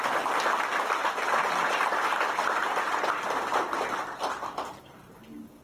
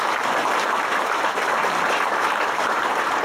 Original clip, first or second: first